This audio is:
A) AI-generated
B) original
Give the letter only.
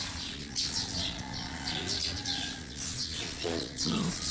A